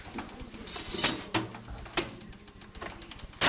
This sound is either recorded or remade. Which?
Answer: recorded